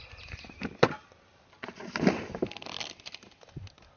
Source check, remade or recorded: recorded